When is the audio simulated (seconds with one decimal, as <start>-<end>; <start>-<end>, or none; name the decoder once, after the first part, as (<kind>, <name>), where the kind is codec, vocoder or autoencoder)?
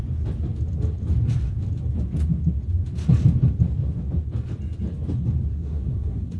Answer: 5.5-6.4 (codec, SNAC)